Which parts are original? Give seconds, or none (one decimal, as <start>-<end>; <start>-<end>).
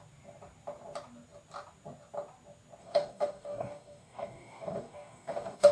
0.0-2.8